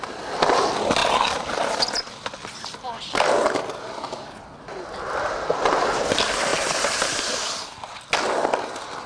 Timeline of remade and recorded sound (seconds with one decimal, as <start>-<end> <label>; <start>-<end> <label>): 0.0-9.1 recorded